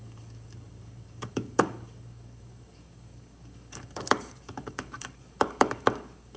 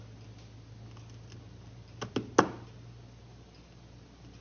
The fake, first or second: first